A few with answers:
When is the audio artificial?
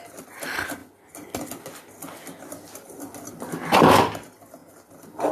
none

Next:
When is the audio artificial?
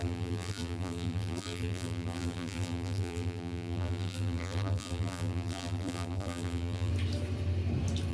0.0-6.9 (vocoder, BigVGAN v2)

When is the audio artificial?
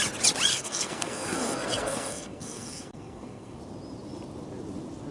0.5-3.6 (codec, SNAC)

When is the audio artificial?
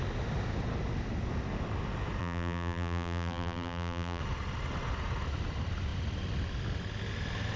2.2-4.2 (vocoder, BigVGAN v2)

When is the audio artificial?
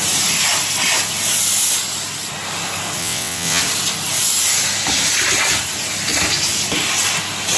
3.0-3.6 (vocoder, WaveNeXt)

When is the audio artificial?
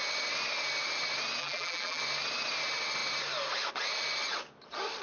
1.4-2.0 (vocoder, BigVGAN v2)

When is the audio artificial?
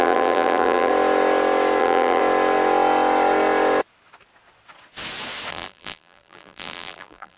0.0-0.9 (vocoder, BigVGAN v2); 1.8-2.2; 5.5-7.4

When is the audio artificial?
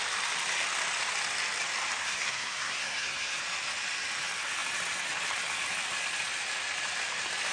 2.0-3.4 (codec, SNAC)